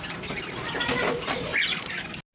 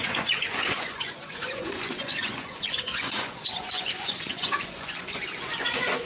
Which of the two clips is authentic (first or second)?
first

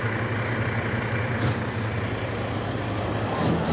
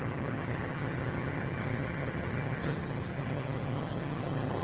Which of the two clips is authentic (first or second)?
first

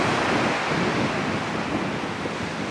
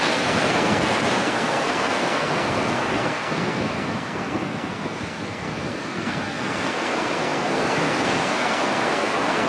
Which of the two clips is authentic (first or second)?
first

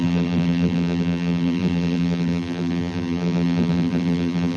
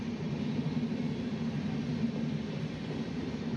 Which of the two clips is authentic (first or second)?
second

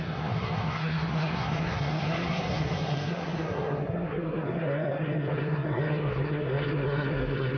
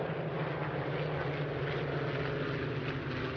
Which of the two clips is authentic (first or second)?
second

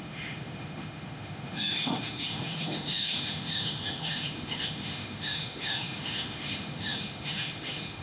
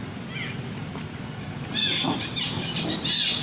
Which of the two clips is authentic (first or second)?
second